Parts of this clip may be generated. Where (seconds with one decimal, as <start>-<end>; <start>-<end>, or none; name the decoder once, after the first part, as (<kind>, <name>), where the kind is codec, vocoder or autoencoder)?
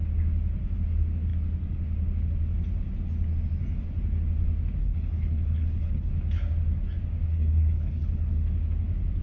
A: 4.8-6.1 (codec, HILCodec); 7.3-8.5